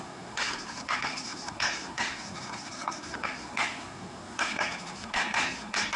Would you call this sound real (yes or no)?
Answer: no